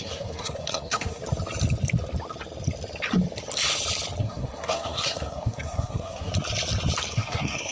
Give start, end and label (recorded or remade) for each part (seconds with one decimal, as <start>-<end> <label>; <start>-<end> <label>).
0.0-1.2 remade; 1.2-4.2 recorded; 4.2-6.3 remade; 6.3-7.1 recorded; 7.1-7.7 remade